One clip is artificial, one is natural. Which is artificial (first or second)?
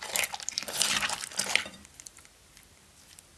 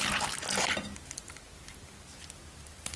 first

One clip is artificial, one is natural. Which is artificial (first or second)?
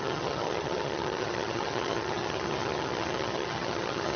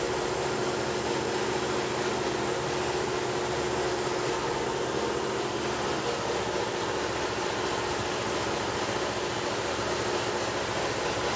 first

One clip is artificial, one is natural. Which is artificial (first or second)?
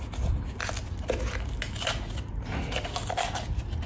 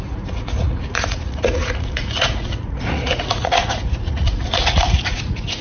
second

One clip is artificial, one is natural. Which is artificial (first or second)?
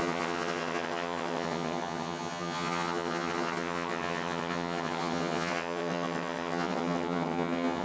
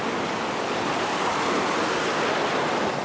first